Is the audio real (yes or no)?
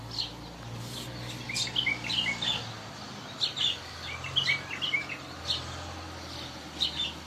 yes